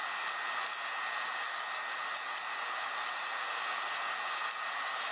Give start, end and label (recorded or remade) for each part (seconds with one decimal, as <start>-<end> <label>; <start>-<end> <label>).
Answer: 0.0-5.1 recorded